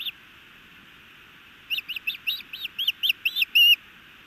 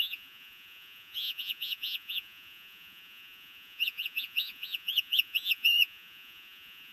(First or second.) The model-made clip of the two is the second